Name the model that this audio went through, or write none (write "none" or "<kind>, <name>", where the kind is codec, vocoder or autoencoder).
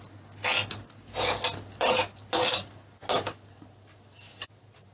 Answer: none